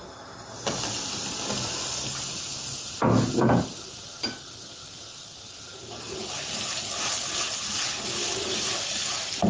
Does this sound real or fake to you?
real